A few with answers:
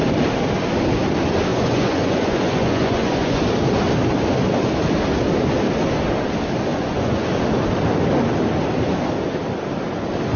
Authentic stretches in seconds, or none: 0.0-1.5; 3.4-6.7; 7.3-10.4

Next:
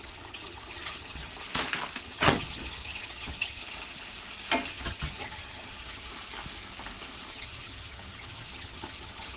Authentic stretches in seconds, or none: 1.3-2.0; 3.6-4.7; 6.1-7.3

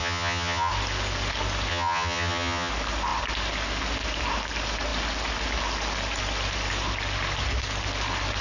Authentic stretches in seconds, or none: 0.7-1.7; 2.7-8.4

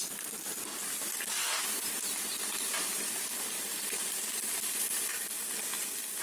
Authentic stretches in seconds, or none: 0.0-1.4; 5.1-6.2

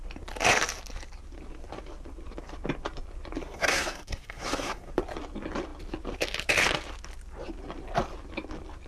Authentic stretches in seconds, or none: 0.0-3.4; 4.9-8.9